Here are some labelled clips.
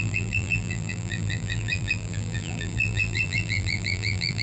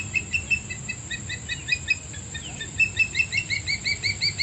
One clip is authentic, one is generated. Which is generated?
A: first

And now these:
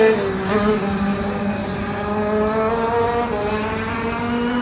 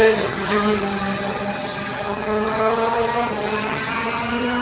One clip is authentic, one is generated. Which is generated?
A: second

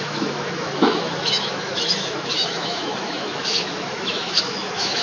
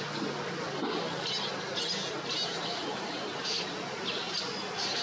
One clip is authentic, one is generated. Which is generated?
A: first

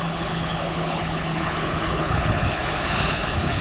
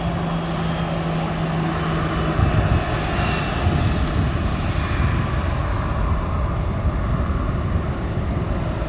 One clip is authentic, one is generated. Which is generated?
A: first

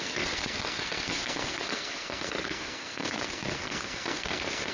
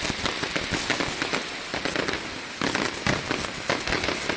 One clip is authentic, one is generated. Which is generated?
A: first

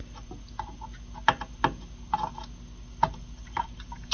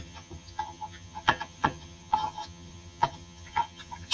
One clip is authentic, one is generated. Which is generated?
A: second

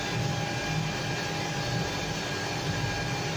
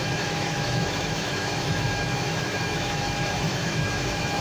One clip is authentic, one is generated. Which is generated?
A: second